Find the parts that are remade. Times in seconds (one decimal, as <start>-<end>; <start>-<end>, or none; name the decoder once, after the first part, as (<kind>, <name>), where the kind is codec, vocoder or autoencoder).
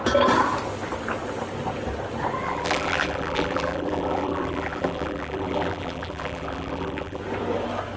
2.4-7.2 (vocoder, BigVGAN v2)